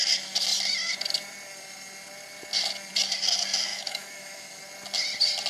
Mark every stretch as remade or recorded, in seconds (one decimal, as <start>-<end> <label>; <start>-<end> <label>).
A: 0.0-3.7 recorded; 3.7-4.6 remade; 4.6-5.5 recorded